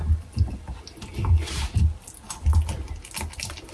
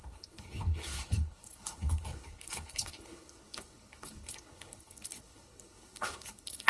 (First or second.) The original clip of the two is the first